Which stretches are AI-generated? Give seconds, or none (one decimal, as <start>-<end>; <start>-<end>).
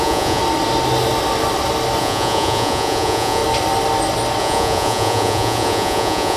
0.0-0.4; 2.0-3.4; 4.4-6.4